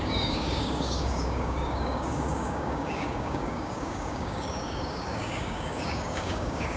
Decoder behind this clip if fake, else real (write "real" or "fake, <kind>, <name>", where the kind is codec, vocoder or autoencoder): fake, codec, DAC